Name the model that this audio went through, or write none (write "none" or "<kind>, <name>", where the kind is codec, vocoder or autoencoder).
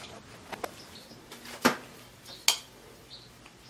none